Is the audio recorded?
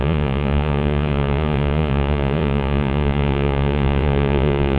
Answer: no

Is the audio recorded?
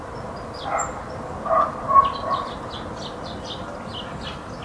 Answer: yes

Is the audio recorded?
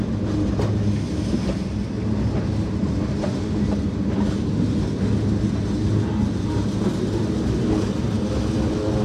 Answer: yes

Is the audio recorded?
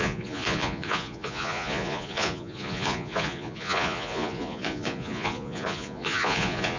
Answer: no